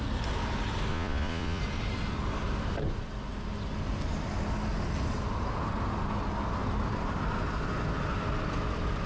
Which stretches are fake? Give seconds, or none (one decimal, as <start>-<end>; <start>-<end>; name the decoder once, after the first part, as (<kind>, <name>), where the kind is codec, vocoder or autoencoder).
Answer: 0.9-1.6 (vocoder, Vocos)